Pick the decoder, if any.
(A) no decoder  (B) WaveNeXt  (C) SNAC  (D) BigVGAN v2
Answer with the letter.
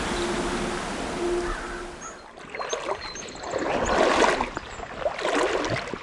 A